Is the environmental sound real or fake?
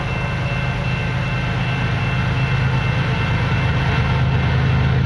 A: real